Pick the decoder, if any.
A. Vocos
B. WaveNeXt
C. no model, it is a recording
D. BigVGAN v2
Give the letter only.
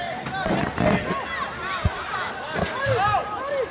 C